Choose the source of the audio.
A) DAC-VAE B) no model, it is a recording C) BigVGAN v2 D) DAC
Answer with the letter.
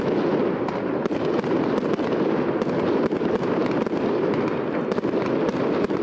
B